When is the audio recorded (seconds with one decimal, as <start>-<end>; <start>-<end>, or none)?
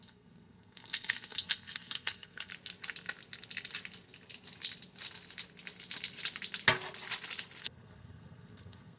2.5-7.6